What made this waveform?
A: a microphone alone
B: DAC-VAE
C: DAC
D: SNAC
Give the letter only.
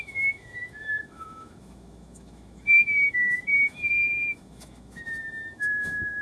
B